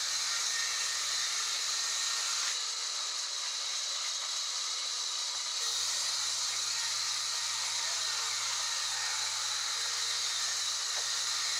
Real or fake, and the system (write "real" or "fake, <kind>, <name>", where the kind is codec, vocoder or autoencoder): real